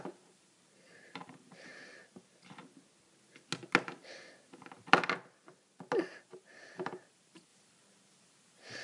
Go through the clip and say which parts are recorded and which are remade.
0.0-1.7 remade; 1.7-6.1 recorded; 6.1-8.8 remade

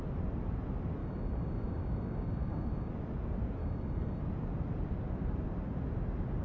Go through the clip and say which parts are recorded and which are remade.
0.0-1.0 recorded; 1.0-2.9 remade; 2.9-3.6 recorded; 3.6-4.2 remade; 4.2-6.4 recorded